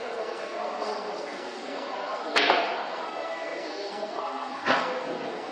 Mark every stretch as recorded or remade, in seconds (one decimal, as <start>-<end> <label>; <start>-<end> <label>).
0.0-5.5 remade